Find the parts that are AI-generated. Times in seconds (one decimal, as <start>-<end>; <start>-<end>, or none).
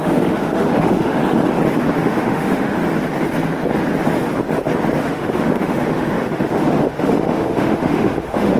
0.0-1.2; 1.9-2.8; 5.0-8.6